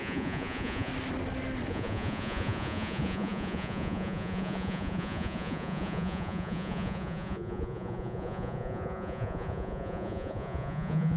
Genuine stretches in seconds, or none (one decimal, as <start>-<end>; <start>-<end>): 0.9-1.7

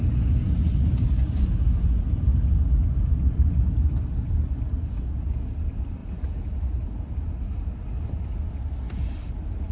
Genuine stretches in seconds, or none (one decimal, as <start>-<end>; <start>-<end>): 0.0-9.7

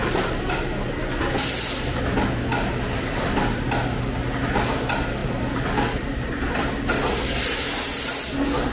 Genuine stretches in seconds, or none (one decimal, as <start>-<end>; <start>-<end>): 0.0-8.7

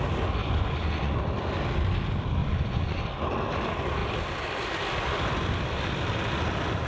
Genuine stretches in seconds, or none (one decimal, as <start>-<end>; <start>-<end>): 0.0-0.4; 1.1-2.4; 3.0-6.9

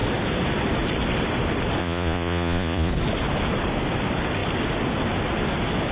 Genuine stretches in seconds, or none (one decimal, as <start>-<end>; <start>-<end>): 0.0-1.8; 2.9-5.9